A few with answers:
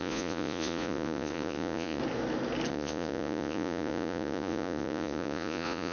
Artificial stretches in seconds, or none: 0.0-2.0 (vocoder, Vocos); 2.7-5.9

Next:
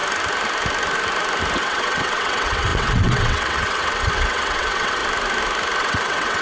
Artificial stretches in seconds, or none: 1.6-5.0 (vocoder, WaveNeXt); 5.8-6.4